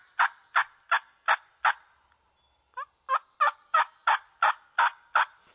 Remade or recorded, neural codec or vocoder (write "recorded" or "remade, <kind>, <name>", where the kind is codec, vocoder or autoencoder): recorded